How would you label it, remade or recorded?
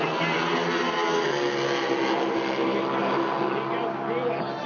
recorded